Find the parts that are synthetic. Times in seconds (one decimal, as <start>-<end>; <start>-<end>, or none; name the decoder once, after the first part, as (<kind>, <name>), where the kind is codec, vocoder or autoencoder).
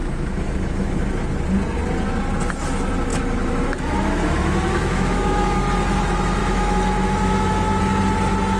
0.0-1.0 (autoencoder, DAC-VAE); 3.1-5.6; 6.4-7.8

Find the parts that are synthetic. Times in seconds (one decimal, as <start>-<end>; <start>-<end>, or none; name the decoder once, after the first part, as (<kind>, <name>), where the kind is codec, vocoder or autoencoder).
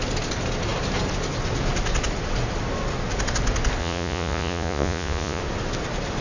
3.8-5.4 (vocoder, Vocos)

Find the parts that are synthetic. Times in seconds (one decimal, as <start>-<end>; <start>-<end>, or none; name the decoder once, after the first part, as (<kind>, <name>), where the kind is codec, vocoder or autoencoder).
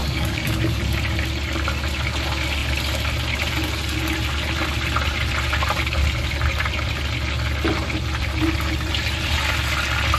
0.0-0.8 (codec, DAC)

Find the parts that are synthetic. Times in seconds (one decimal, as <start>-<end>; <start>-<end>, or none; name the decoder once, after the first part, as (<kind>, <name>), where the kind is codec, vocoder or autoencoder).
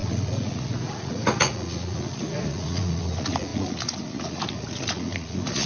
0.0-5.7 (vocoder, Vocos)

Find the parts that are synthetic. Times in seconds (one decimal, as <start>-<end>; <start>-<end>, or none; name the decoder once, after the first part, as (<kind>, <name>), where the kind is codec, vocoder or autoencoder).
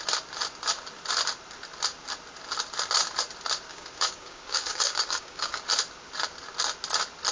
3.7-5.6 (codec, DAC)